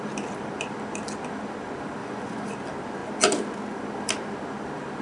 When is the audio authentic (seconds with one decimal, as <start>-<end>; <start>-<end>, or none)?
0.0-2.0; 2.5-5.0